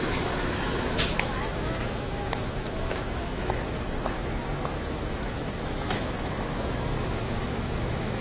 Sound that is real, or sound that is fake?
fake